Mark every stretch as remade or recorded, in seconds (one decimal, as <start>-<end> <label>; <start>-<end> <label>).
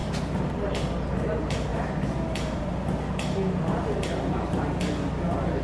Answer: 0.0-5.6 recorded